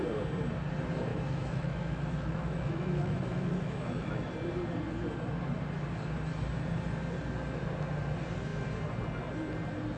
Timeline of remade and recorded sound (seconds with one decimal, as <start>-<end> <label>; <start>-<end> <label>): 0.0-1.1 recorded; 1.1-4.3 remade; 4.3-10.0 recorded